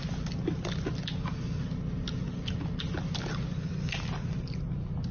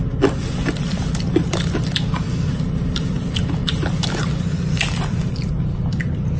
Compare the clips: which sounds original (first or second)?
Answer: first